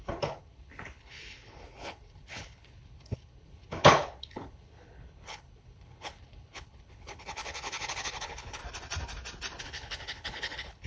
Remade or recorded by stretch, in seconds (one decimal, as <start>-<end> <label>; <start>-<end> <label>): 0.0-8.6 remade; 8.6-9.6 recorded; 9.6-10.9 remade